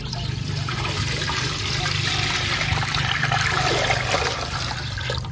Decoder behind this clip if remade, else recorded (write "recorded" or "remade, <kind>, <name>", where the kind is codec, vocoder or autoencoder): recorded